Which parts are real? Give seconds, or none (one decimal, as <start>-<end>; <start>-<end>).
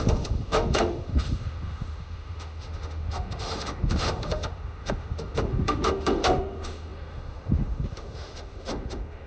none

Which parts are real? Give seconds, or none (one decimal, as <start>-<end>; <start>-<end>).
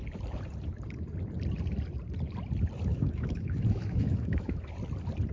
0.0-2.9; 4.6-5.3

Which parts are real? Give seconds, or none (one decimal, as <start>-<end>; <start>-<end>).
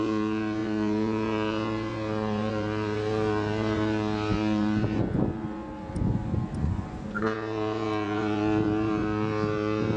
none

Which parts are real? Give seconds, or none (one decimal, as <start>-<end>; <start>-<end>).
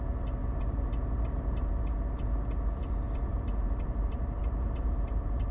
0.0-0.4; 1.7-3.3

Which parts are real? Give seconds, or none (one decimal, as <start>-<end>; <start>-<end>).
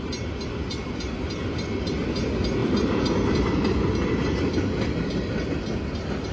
0.0-6.3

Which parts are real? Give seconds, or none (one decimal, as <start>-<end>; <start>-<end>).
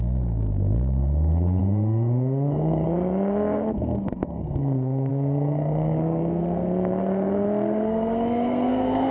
none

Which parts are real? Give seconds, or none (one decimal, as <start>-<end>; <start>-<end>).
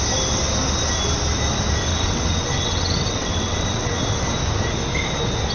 0.0-1.9; 4.0-5.5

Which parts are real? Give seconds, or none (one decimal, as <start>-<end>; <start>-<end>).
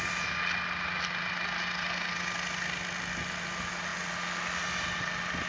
0.0-5.5